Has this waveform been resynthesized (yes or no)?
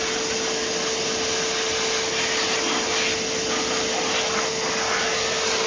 no